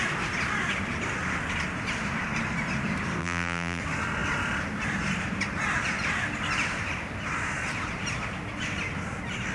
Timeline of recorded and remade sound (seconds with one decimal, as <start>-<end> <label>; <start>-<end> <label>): 0.0-3.2 recorded; 3.2-3.8 remade; 3.8-9.5 recorded